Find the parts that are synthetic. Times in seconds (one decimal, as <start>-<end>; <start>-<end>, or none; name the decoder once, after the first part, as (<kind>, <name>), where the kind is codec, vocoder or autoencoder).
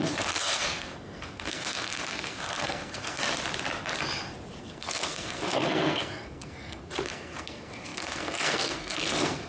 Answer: 0.0-3.2 (codec, SNAC); 4.6-9.5